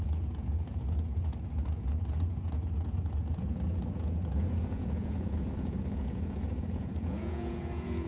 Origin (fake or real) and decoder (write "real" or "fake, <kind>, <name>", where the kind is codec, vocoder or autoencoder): fake, vocoder, Vocos